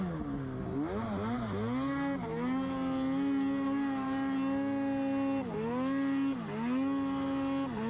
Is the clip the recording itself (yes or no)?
yes